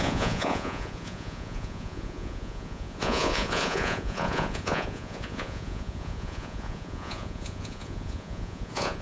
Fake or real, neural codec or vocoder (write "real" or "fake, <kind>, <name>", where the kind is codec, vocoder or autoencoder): fake, vocoder, Vocos